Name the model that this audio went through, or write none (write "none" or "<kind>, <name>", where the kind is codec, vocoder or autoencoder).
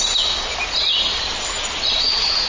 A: none